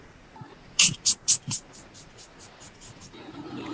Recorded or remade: remade